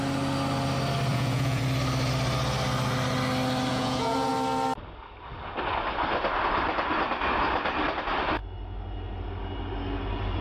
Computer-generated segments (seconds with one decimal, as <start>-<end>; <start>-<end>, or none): 1.1-1.6; 3.7-4.3

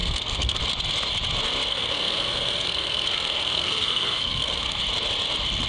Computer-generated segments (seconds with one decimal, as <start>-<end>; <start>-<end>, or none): 0.0-0.6; 1.7-4.8

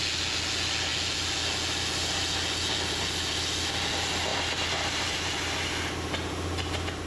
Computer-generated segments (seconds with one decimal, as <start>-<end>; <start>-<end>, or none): 4.3-5.6

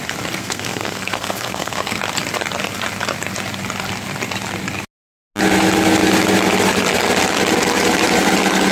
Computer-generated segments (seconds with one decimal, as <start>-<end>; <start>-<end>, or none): 0.4-2.0

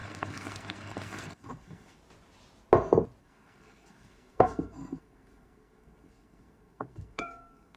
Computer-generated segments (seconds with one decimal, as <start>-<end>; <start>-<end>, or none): 0.0-2.0; 3.2-7.8

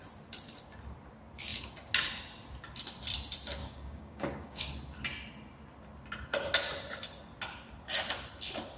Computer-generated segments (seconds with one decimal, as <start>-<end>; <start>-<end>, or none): 3.6-4.6

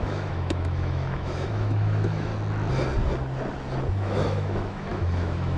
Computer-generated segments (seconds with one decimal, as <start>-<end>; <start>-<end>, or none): 0.0-2.3; 3.9-5.6

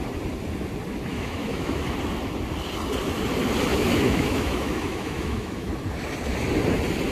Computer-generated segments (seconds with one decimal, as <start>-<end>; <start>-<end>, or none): 1.1-1.8; 3.7-5.7